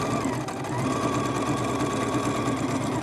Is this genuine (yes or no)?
yes